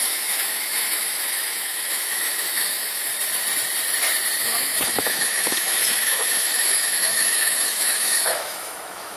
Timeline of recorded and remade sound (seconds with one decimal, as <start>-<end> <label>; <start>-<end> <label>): 0.0-3.1 remade; 3.1-4.4 recorded; 4.4-9.2 remade